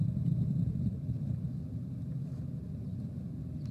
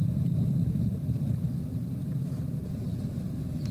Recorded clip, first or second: first